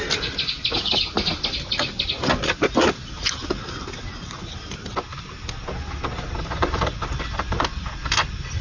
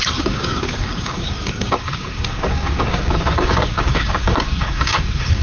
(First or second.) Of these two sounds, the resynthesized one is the second